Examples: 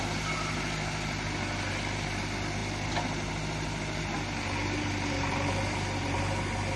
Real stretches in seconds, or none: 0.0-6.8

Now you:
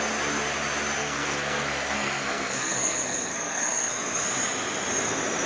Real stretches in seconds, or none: 0.0-1.0; 3.9-5.5